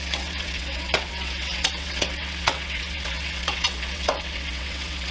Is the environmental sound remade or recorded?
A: remade